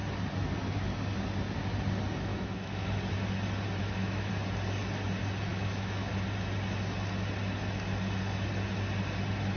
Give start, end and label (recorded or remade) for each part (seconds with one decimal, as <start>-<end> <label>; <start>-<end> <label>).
0.0-2.3 recorded; 2.3-2.9 remade; 2.9-3.8 recorded; 3.8-4.3 remade; 4.3-5.5 recorded; 5.5-6.1 remade; 6.1-9.6 recorded